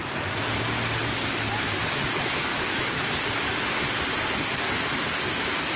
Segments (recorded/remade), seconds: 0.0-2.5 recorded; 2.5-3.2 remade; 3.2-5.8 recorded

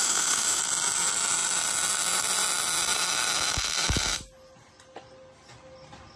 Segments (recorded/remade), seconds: 0.0-0.6 remade; 0.6-6.2 recorded